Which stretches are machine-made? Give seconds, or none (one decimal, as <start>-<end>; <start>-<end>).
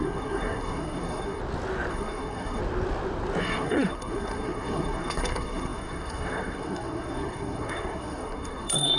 0.0-1.4; 1.9-2.6; 3.4-9.0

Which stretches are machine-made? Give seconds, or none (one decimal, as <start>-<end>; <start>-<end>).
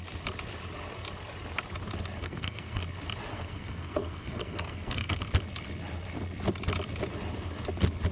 2.2-2.8; 3.3-5.2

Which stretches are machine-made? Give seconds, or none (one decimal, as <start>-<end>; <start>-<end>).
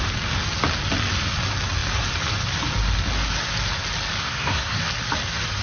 4.2-4.8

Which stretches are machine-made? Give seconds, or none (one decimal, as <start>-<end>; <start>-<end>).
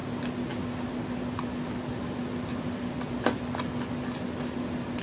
none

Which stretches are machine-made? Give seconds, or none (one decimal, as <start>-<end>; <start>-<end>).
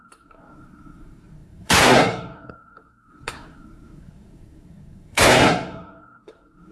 0.0-6.7